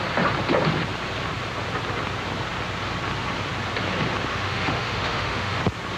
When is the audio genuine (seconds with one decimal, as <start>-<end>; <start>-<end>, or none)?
0.0-4.3; 5.6-6.0